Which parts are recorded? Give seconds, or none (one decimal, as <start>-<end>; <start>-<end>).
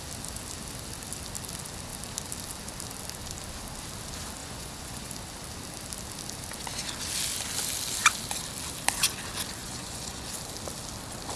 0.0-4.4; 5.1-9.6; 10.3-11.4